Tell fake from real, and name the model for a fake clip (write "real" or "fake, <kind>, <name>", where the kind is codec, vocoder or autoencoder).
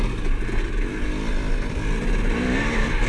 real